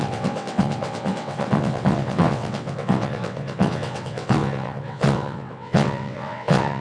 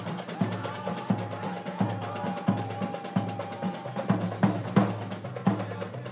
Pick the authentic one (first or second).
second